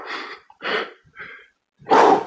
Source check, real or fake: real